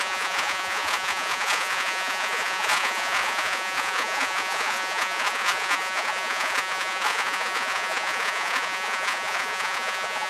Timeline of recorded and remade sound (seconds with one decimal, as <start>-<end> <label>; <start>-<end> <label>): 0.0-10.3 remade